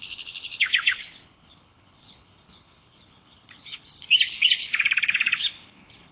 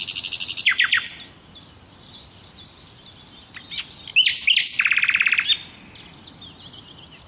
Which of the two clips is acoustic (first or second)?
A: second